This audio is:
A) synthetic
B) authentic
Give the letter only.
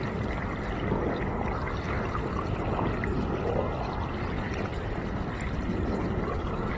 B